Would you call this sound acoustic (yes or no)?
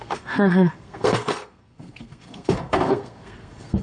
no